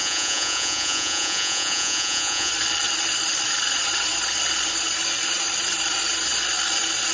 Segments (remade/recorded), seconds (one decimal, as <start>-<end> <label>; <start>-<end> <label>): 0.0-2.5 remade; 2.5-7.1 recorded